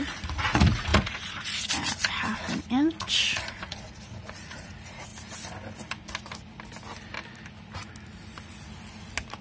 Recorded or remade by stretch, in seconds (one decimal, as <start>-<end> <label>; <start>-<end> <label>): 0.0-5.1 remade; 5.1-9.4 recorded

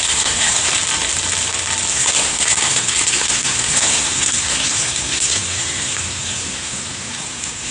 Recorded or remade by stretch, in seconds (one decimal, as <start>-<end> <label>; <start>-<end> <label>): 0.0-0.7 remade; 0.7-1.9 recorded; 1.9-7.7 remade

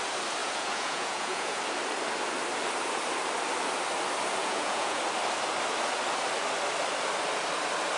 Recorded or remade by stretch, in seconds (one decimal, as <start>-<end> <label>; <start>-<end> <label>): 0.0-0.4 recorded; 0.4-1.6 remade; 1.6-4.4 recorded; 4.4-5.0 remade; 5.0-8.0 recorded

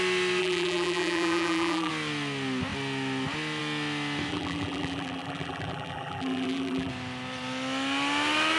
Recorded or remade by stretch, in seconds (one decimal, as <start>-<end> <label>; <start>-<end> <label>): 0.0-0.4 recorded; 0.4-1.9 remade; 1.9-4.3 recorded; 4.3-6.9 remade; 6.9-8.6 recorded

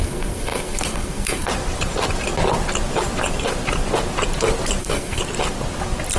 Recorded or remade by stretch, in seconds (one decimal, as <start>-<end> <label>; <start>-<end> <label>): 0.0-1.5 remade; 1.5-4.8 recorded; 4.8-5.2 remade; 5.2-6.2 recorded